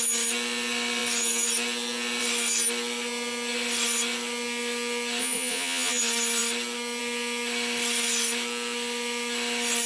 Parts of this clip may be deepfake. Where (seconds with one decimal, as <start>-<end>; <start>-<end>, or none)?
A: 5.2-6.0

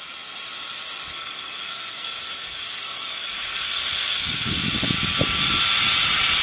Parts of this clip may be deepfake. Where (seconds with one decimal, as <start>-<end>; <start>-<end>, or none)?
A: 1.1-4.6

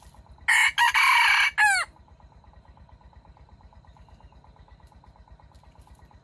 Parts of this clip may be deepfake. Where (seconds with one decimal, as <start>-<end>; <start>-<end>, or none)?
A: none

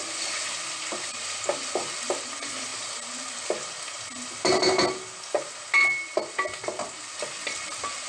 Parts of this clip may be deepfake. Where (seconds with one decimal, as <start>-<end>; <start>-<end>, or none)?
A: none

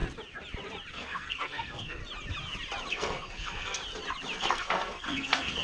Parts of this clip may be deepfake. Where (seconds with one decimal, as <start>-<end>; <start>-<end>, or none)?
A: 0.9-2.0; 2.9-3.8; 4.4-5.6

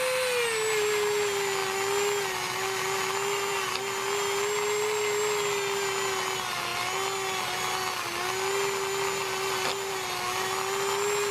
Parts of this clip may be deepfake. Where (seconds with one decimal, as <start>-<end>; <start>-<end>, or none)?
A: none

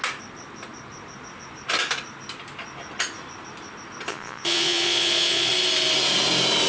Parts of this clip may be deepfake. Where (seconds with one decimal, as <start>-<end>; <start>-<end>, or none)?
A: 4.1-5.5